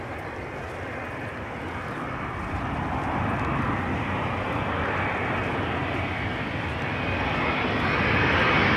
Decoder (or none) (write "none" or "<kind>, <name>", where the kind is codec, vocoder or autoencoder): none